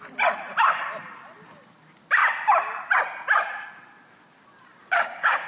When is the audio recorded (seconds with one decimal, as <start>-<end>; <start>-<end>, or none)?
0.0-4.8